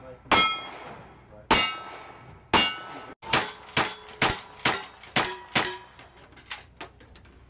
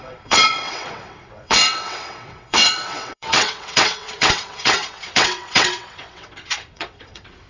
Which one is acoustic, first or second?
first